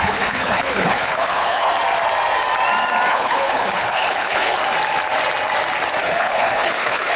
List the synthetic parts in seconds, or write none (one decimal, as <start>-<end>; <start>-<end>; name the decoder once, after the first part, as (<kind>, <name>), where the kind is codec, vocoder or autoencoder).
0.0-1.7 (codec, HILCodec); 3.1-4.6; 6.0-7.2